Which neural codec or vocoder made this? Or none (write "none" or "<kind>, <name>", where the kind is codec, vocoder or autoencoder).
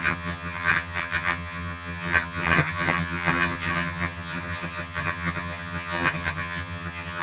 vocoder, HiFi-GAN